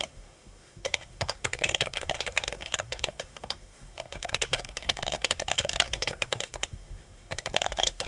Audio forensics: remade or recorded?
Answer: remade